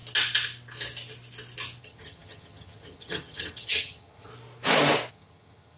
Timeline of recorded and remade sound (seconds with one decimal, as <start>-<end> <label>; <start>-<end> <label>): 0.0-1.8 recorded; 1.8-4.3 remade; 4.3-5.1 recorded; 5.1-5.8 remade